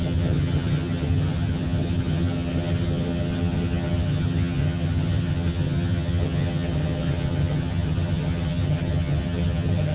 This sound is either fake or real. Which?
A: fake